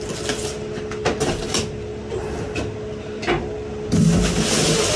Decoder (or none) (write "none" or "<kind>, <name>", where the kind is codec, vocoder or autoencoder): none